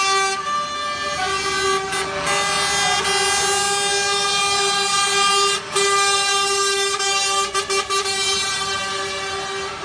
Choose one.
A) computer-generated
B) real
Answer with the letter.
B